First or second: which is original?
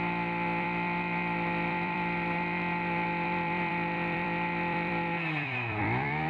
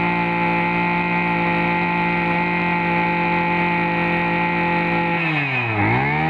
second